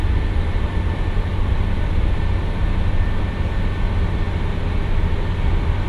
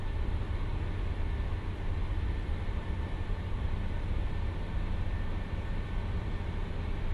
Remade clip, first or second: second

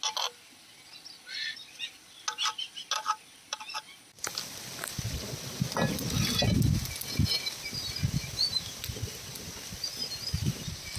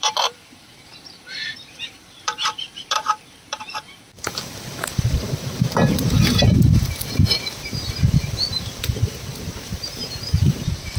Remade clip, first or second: second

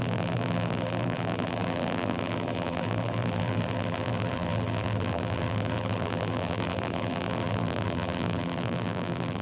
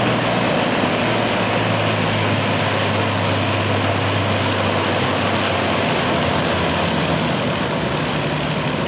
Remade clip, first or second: first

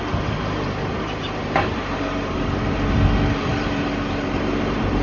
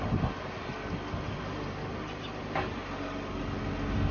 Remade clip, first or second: first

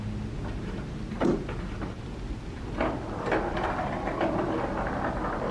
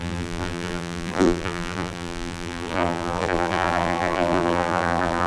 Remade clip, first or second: second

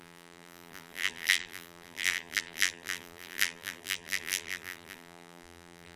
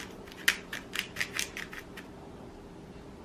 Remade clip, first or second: first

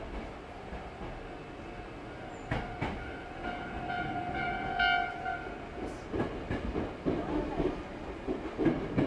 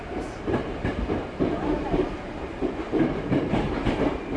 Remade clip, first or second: second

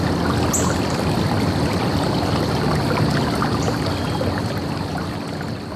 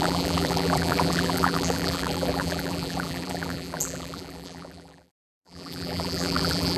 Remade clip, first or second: second